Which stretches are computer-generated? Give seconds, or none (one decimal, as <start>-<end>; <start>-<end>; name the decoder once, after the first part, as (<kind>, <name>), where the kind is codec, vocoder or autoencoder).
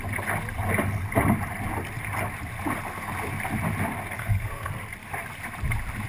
4.2-4.7 (codec, SNAC)